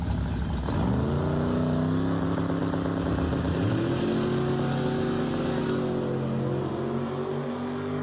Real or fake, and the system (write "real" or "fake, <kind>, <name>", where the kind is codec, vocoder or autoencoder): real